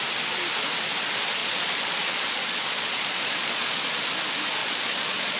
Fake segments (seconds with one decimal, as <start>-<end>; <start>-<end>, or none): 1.4-3.8; 4.6-5.4